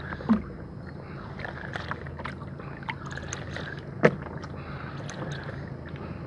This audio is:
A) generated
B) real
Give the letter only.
B